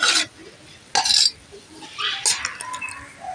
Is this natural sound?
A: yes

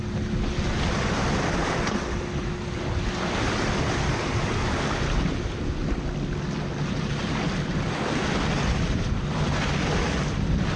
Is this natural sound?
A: yes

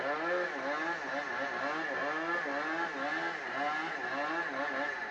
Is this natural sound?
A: yes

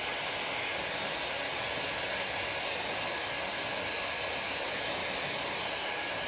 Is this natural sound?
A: yes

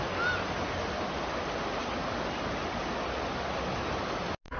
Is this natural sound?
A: yes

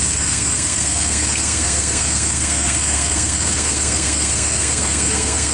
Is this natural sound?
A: no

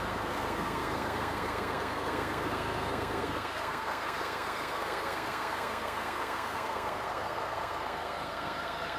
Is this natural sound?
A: no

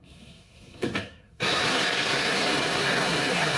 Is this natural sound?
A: no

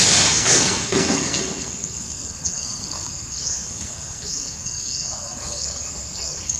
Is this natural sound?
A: no